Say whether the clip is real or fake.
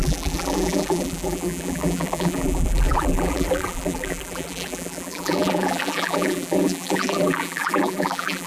fake